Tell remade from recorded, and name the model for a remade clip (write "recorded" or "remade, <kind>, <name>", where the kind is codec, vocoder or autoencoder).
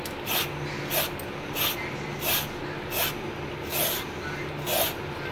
recorded